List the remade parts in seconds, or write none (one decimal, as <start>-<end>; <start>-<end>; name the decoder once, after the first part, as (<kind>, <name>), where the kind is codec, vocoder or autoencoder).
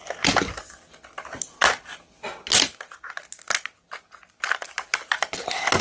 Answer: none